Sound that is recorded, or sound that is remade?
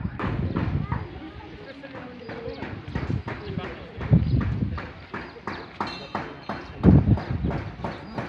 recorded